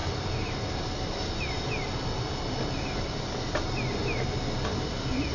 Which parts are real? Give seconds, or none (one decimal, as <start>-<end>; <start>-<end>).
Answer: 0.0-5.3